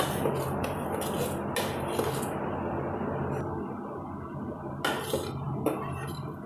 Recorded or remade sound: recorded